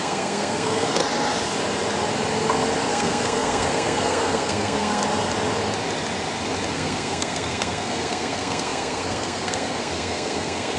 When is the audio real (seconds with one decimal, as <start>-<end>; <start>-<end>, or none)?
1.0-2.9; 5.0-6.7